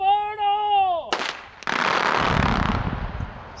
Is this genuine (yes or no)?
yes